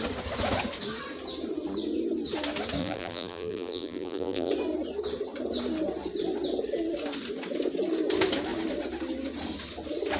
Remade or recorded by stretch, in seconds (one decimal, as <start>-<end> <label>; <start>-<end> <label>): 0.0-2.8 recorded; 2.8-4.5 remade; 4.5-10.2 recorded